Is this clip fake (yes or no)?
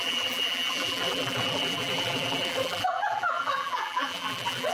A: yes